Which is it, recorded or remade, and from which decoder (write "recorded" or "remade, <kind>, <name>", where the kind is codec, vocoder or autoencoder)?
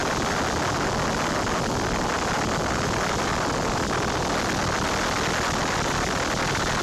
recorded